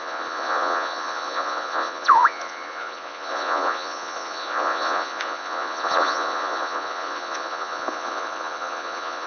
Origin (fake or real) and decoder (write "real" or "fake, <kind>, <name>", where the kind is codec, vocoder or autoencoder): fake, vocoder, Vocos